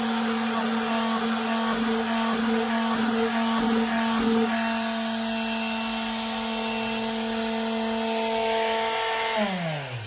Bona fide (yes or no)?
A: yes